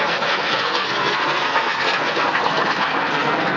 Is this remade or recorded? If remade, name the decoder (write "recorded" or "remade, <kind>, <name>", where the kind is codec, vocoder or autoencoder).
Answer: remade, codec, SNAC